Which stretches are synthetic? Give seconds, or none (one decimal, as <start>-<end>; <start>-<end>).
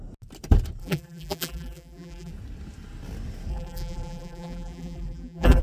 0.8-2.3; 3.5-5.6